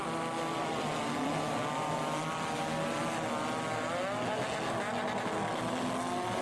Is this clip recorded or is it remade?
recorded